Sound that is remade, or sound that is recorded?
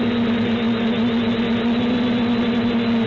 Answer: recorded